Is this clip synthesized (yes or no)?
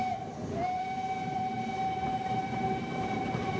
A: yes